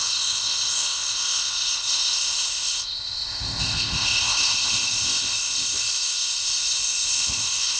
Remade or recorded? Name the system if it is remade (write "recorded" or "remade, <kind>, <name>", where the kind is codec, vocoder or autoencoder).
remade, codec, ZipCodec